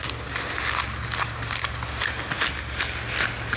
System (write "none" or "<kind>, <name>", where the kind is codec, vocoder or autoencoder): none